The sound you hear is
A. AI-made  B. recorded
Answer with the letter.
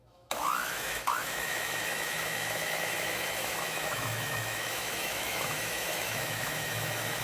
A